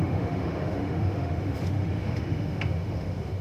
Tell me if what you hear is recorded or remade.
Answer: remade